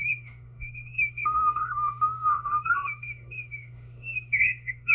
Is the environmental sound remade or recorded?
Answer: remade